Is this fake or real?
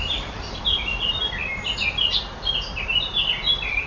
fake